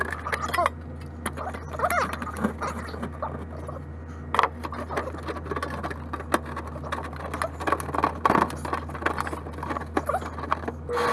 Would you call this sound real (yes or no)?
yes